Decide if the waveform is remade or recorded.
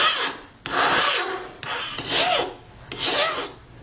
recorded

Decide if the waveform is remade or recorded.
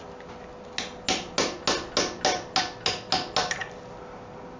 recorded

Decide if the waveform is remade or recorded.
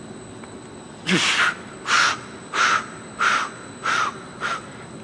recorded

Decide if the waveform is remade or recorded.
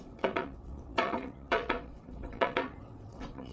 remade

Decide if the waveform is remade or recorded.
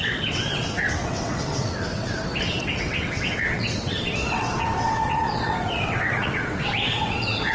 remade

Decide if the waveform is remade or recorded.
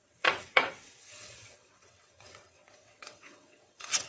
remade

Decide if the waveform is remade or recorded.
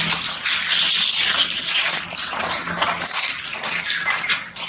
recorded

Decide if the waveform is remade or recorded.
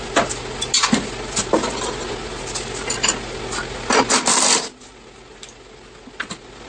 recorded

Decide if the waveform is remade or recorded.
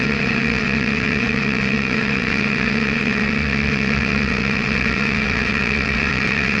remade